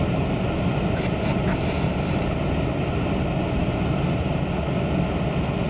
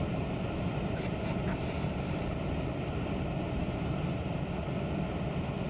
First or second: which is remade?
second